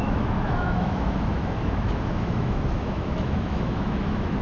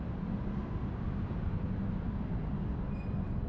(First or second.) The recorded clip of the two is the second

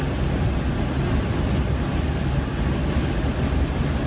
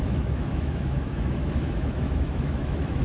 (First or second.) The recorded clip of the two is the first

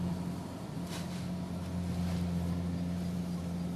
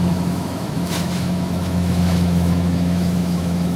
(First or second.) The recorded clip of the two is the first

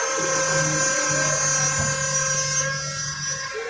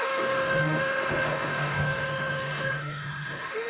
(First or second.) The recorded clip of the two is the first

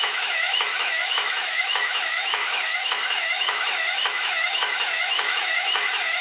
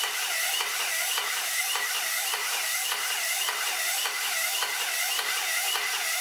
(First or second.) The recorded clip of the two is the second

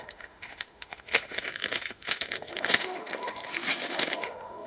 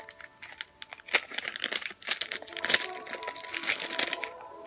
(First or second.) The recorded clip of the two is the second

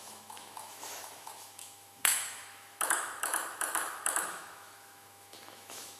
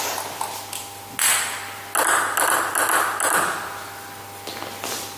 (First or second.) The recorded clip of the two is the second